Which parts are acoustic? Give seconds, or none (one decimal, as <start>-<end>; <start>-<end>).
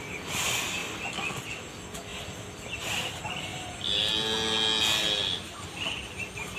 0.0-6.6